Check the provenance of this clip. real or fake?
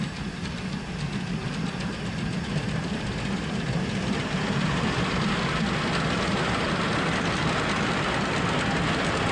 real